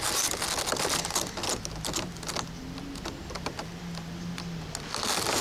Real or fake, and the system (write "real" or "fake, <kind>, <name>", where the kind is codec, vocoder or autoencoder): real